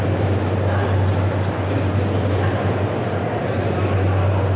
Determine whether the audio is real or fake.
real